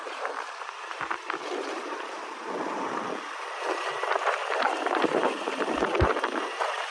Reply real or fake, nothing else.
fake